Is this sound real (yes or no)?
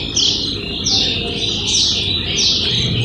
yes